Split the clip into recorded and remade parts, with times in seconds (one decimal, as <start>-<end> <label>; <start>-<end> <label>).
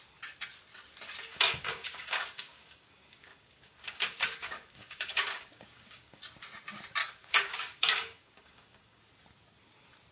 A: 0.0-1.3 recorded; 1.3-6.2 remade; 6.2-7.0 recorded; 7.0-9.0 remade; 9.0-10.1 recorded